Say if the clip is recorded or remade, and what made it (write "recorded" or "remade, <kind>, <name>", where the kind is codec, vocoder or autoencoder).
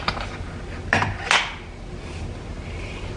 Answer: recorded